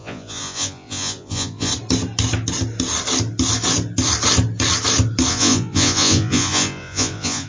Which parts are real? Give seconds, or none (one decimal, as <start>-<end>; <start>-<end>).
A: 1.7-5.3